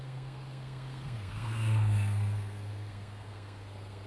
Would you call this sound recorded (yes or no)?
no